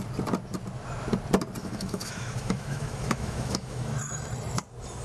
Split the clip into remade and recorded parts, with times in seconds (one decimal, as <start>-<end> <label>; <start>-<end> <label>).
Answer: 0.0-1.6 recorded; 1.6-4.6 remade; 4.6-5.0 recorded